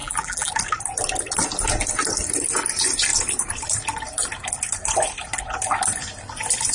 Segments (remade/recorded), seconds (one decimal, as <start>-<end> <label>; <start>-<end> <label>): 0.0-0.5 remade; 0.5-6.7 recorded

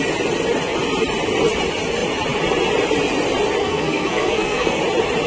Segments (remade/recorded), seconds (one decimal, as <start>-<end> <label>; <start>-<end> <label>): 0.0-3.6 recorded; 3.6-4.8 remade; 4.8-5.3 recorded